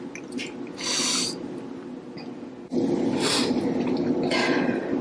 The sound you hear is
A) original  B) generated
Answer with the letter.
A